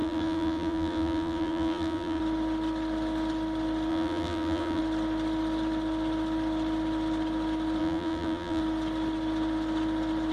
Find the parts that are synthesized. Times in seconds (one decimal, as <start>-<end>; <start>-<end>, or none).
0.0-2.2; 3.9-4.8; 7.8-8.6